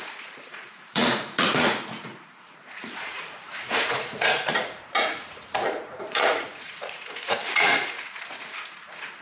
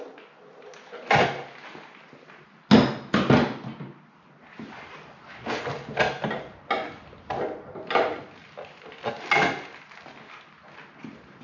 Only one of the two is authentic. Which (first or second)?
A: second